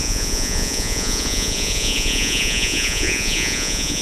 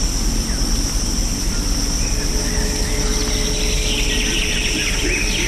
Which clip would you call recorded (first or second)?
second